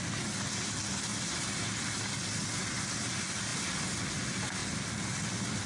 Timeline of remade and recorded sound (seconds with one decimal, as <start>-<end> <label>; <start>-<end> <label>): 0.0-5.7 recorded